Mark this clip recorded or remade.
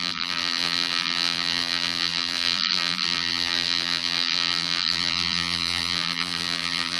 remade